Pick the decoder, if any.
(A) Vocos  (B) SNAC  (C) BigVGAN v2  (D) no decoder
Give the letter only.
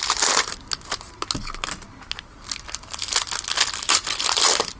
D